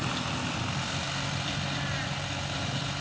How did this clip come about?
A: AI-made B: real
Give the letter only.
B